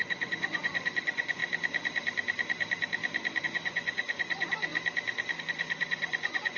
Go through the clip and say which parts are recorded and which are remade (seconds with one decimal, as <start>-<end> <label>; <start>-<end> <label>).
0.0-1.4 remade; 1.4-3.4 recorded; 3.4-4.7 remade; 4.7-5.4 recorded; 5.4-6.6 remade